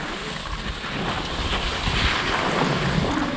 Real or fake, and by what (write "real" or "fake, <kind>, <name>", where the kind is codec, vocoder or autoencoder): real